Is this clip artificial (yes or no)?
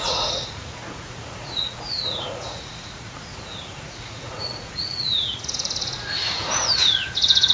yes